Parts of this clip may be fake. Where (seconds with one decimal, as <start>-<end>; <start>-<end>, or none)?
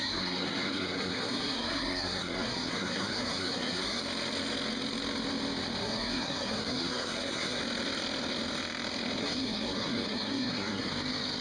0.0-4.0; 5.8-7.6; 9.2-10.9